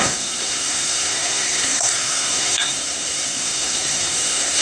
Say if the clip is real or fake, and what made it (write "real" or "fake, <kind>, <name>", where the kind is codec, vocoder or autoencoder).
fake, codec, SNAC